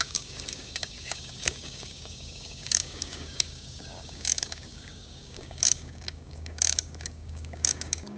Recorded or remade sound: remade